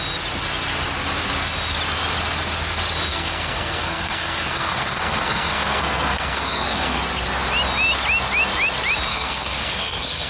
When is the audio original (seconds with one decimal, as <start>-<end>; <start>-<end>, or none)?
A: 0.0-3.1; 7.0-9.1